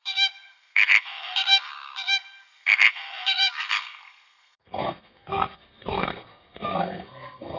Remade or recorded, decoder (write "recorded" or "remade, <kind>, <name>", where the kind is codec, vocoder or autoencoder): remade, codec, SNAC